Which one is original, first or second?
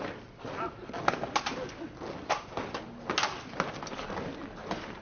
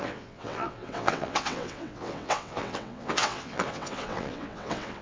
first